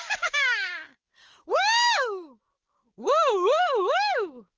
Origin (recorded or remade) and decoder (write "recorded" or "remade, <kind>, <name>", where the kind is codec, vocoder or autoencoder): remade, codec, DAC